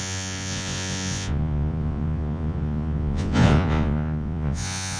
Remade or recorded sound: remade